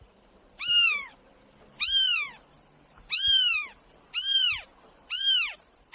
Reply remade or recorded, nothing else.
remade